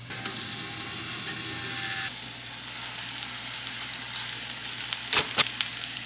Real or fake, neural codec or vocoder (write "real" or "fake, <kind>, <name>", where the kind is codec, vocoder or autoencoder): real